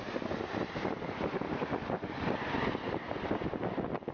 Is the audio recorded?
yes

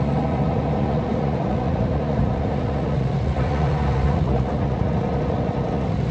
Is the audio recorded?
no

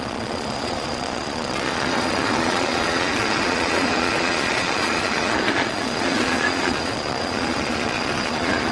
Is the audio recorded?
no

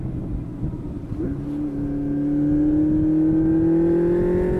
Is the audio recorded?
yes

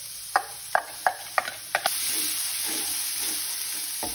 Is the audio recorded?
yes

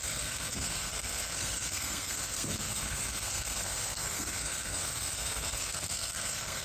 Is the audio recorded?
no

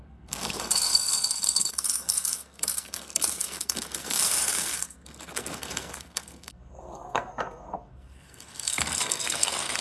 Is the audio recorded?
no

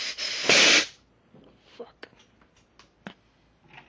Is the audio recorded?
yes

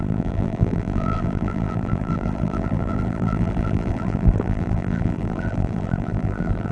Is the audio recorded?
no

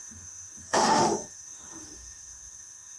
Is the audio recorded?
no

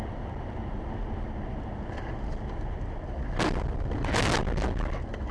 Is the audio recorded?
yes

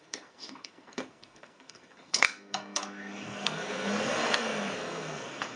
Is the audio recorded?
no